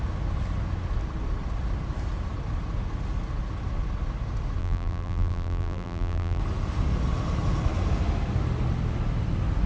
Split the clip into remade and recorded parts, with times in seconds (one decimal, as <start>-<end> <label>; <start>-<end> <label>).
0.0-4.6 recorded; 4.6-6.4 remade; 6.4-9.7 recorded